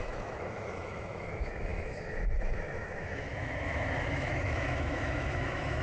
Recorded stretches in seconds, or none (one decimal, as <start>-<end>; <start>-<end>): none